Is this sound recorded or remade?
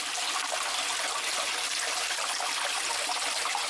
recorded